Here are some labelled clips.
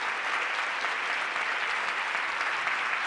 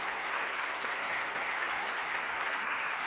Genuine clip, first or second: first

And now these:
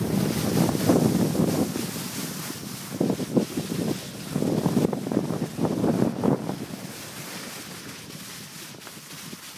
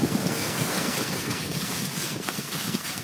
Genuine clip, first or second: first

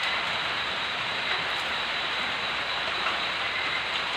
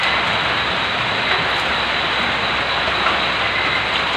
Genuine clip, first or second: second